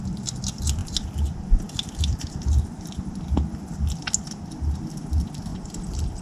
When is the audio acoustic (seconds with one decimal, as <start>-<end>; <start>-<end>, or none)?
0.0-5.5